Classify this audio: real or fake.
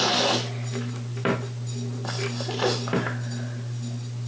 real